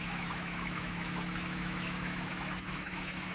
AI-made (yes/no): yes